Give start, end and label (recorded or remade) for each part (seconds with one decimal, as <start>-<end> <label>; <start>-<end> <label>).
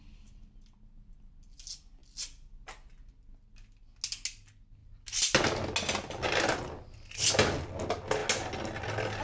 0.0-9.2 recorded